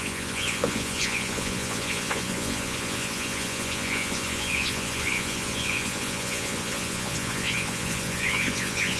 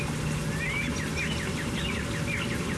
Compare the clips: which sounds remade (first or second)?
first